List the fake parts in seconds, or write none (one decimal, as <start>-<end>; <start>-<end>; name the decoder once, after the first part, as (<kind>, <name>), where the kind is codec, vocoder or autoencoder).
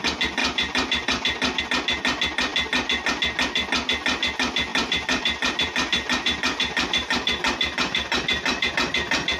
0.4-1.6 (vocoder, BigVGAN v2); 4.7-8.7